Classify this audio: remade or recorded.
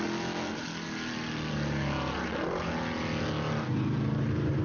recorded